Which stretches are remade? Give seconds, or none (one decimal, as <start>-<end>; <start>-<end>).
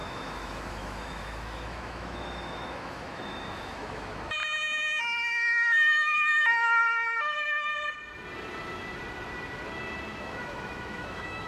0.0-4.4; 5.0-7.7; 10.2-11.5